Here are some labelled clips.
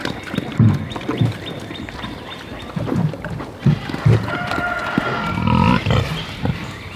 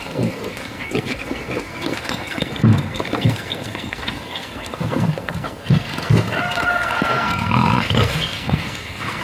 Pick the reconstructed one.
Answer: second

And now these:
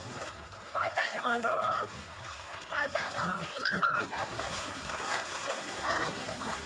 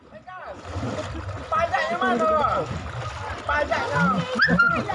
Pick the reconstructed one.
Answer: first